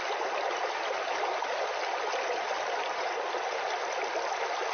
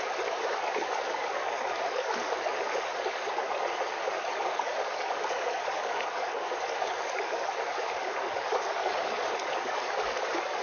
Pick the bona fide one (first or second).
first